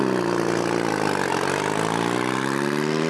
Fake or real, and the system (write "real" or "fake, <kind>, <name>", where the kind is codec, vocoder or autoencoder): real